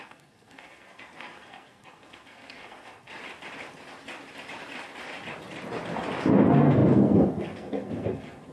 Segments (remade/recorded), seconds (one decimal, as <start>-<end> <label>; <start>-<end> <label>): 0.0-3.1 remade; 3.1-6.3 recorded; 6.3-8.5 remade